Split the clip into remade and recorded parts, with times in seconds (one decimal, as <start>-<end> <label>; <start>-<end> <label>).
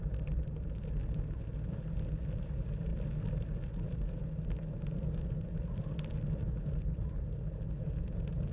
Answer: 0.0-8.5 recorded